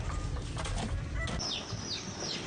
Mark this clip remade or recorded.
recorded